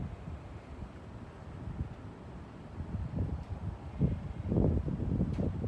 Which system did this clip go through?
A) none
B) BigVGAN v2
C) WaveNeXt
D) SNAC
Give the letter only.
B